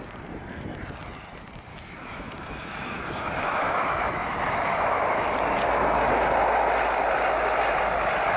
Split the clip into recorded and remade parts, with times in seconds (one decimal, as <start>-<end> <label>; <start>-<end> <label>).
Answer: 0.0-1.7 recorded; 1.7-5.3 remade; 5.3-8.4 recorded